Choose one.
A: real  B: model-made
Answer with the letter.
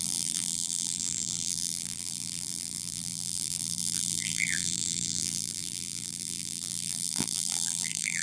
B